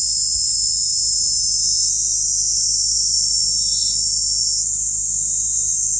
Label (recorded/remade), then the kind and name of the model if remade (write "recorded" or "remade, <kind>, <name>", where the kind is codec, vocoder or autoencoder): recorded